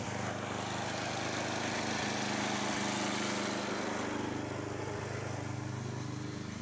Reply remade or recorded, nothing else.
recorded